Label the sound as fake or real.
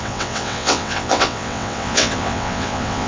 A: fake